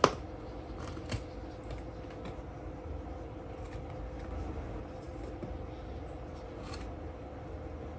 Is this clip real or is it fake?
real